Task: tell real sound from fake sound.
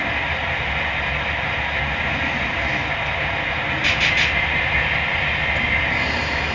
real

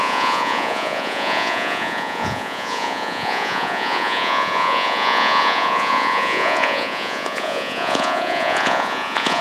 fake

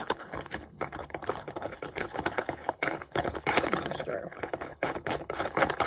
fake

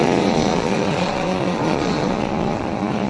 fake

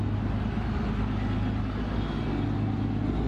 real